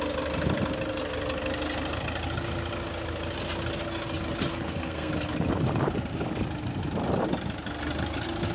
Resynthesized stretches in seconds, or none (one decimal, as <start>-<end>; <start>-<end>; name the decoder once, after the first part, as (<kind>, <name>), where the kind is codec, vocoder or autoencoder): 4.5-5.1 (codec, SNAC)